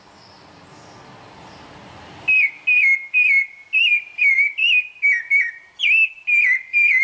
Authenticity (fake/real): real